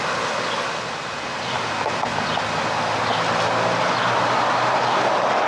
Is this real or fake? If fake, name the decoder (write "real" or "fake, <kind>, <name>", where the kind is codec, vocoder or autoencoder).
real